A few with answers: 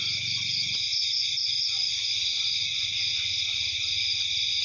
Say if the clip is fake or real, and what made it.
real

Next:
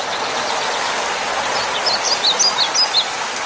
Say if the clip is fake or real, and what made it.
real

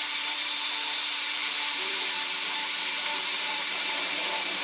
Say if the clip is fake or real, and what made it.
fake, vocoder, BigVGAN v2